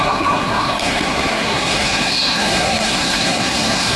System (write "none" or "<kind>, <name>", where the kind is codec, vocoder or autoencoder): codec, SNAC